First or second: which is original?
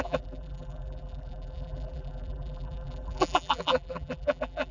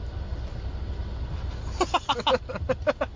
second